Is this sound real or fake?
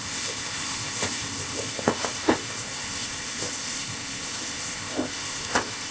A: fake